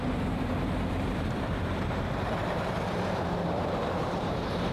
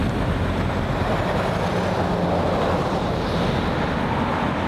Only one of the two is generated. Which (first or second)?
first